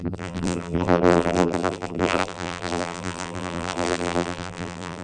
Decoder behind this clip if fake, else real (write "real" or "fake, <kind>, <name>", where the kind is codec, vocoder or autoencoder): fake, vocoder, BigVGAN v2